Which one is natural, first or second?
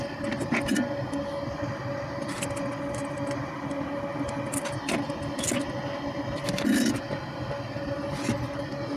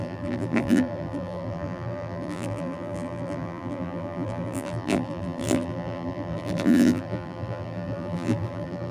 first